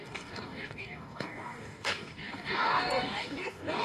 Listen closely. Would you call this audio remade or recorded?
remade